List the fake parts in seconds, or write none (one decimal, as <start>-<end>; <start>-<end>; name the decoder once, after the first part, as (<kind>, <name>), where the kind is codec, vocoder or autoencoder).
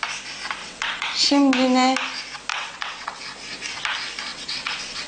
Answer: 0.6-1.2 (vocoder, WaveNeXt); 2.5-3.2; 4.3-5.1